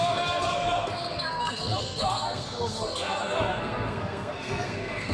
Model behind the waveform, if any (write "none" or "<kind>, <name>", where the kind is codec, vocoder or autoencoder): codec, SNAC